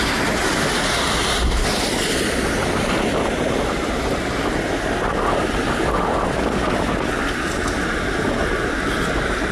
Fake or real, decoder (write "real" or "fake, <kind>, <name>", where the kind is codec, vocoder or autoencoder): real